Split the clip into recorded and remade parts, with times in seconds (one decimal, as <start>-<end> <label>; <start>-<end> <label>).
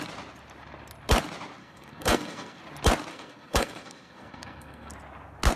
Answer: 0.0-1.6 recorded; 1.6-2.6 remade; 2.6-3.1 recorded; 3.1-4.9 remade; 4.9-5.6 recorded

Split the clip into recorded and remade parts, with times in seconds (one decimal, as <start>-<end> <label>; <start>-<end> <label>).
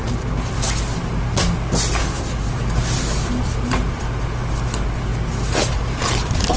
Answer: 0.0-2.0 recorded; 2.0-2.5 remade; 2.5-6.6 recorded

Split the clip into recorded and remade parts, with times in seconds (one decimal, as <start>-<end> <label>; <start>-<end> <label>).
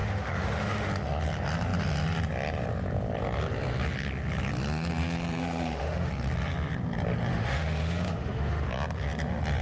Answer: 0.0-0.9 remade; 0.9-5.4 recorded; 5.4-6.1 remade; 6.1-7.3 recorded; 7.3-8.7 remade; 8.7-9.6 recorded